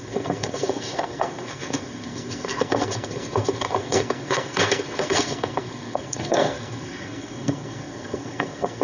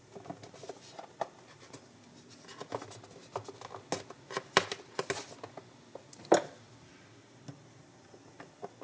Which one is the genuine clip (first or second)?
second